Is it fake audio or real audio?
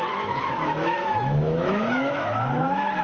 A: fake